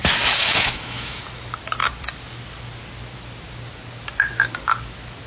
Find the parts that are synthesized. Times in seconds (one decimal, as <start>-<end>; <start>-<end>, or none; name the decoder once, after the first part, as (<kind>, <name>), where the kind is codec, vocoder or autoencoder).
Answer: 0.4-1.2 (autoencoder, DAC-VAE)